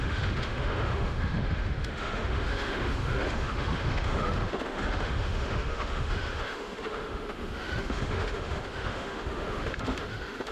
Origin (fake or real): fake